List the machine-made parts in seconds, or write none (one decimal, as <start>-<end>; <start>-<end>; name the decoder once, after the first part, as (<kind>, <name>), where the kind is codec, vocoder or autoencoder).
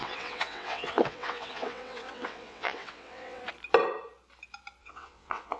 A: 0.0-3.4 (vocoder, WaveNeXt); 4.8-5.6